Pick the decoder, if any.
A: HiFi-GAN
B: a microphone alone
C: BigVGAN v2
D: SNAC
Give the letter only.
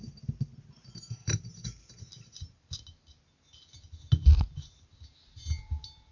B